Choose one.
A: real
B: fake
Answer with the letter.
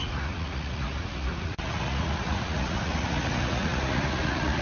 B